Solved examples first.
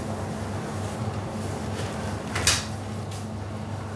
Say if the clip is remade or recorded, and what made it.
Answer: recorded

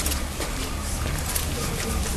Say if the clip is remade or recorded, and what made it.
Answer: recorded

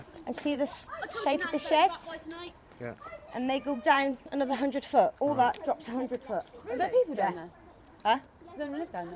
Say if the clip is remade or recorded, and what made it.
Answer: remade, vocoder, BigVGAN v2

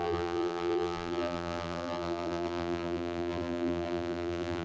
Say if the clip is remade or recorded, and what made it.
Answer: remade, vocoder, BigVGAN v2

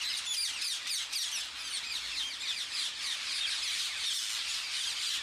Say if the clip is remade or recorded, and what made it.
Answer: recorded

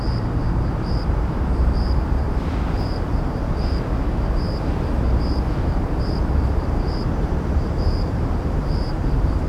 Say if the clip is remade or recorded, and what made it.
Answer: remade, vocoder, BigVGAN v2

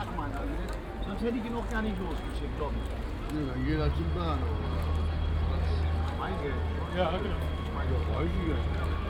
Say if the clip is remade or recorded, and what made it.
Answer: recorded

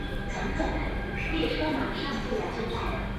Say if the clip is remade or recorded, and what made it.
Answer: recorded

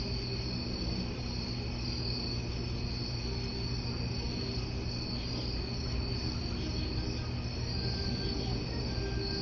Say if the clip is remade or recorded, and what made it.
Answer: recorded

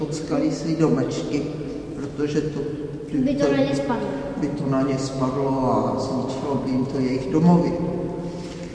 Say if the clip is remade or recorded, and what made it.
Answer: recorded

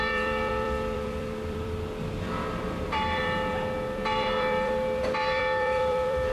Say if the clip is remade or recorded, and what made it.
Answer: remade, vocoder, BigVGAN v2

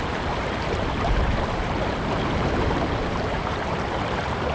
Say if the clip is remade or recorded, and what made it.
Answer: remade, vocoder, BigVGAN v2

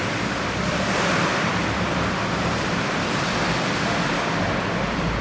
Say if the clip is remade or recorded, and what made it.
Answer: remade, vocoder, BigVGAN v2